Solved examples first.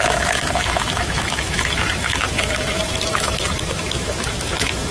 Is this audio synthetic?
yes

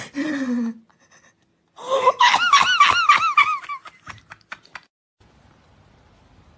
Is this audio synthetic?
no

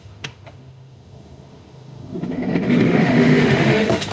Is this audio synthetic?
yes